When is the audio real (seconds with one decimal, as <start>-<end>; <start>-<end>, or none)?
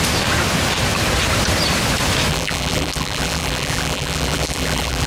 0.0-2.3